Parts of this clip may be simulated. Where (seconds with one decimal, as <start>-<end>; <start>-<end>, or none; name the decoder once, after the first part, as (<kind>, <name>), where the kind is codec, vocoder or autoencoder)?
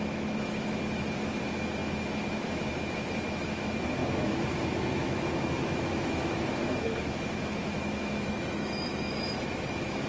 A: 0.0-10.1 (autoencoder, DAC-VAE)